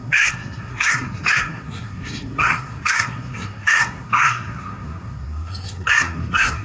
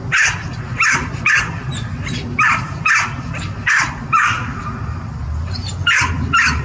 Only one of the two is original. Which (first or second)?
second